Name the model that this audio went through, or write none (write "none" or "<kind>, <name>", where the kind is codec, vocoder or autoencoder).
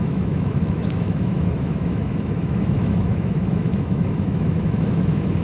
autoencoder, DAC-VAE